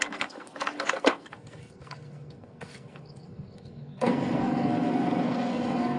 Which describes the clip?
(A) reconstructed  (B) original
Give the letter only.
A